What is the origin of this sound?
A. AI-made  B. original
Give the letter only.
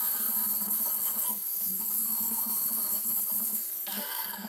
A